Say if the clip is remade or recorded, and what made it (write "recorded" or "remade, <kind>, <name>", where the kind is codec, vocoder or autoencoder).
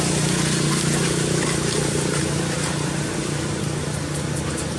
recorded